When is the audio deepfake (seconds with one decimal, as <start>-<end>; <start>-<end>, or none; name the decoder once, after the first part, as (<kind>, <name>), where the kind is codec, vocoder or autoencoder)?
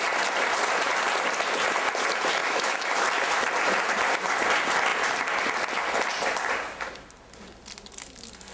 2.4-3.0 (autoencoder, DAC-VAE)